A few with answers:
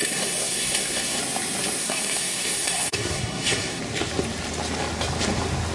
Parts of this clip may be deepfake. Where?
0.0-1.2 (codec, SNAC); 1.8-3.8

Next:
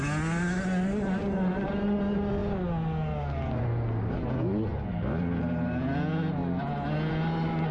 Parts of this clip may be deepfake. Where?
none

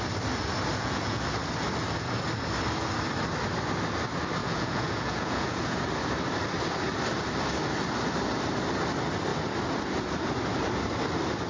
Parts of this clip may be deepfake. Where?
0.7-1.2 (vocoder, Vocos); 4.4-5.8

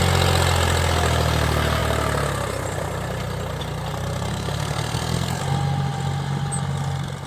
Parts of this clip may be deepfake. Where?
4.3-5.4 (codec, SNAC)

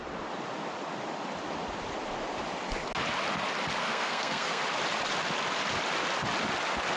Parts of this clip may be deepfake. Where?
3.8-4.6 (codec, SNAC)

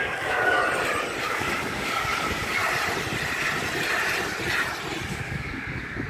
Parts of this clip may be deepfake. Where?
0.0-0.6 (codec, DAC); 1.2-2.6; 5.1-6.1

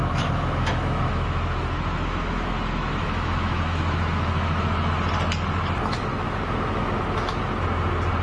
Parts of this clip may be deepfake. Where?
0.0-4.9 (autoencoder, DAC-VAE); 6.1-7.0

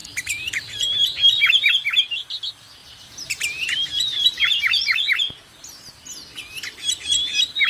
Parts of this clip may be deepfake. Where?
0.0-1.7 (vocoder, BigVGAN v2); 2.8-5.0